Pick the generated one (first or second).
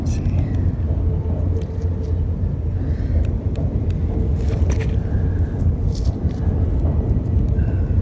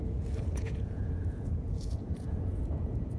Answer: second